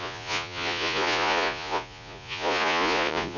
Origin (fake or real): fake